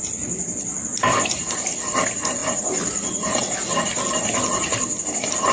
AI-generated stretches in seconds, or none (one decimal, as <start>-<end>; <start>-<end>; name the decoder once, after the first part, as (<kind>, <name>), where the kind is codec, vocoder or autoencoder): none